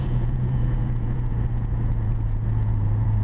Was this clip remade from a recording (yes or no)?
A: yes